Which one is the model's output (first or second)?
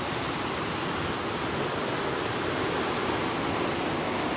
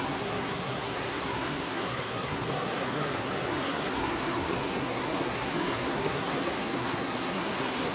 second